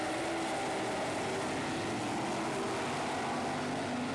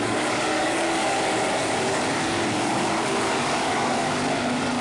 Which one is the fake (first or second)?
second